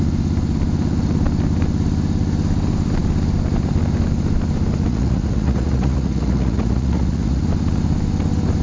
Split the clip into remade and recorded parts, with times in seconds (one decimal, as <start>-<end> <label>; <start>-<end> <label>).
0.0-4.9 recorded; 4.9-7.4 remade; 7.4-8.6 recorded